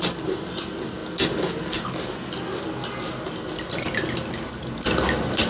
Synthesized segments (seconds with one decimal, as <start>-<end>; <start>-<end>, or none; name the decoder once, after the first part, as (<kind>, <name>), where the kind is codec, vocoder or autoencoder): none

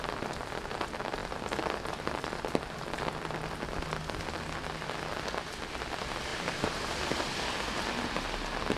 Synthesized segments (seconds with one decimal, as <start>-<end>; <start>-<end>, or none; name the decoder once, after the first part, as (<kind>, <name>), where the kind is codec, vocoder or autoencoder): 6.3-7.2 (vocoder, BigVGAN v2)

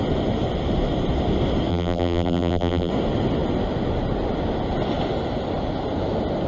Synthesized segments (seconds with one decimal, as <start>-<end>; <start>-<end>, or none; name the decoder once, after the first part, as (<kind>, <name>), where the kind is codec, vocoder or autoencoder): 1.7-2.9 (vocoder, BigVGAN v2)